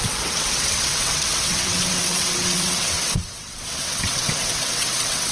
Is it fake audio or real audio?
fake